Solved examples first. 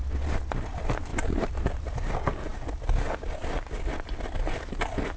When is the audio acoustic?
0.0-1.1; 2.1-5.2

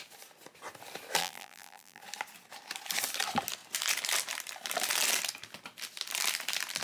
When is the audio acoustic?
0.0-1.2; 2.0-6.8

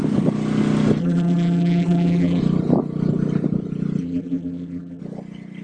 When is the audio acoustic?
0.0-1.0; 2.4-4.0; 5.0-5.6

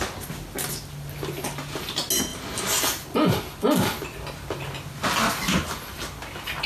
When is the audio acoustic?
0.0-6.7

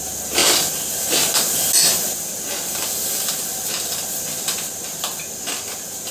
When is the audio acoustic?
0.0-6.1